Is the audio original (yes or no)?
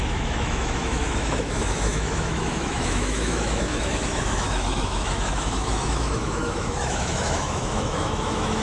no